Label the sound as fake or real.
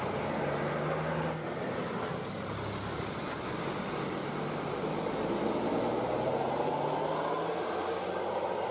real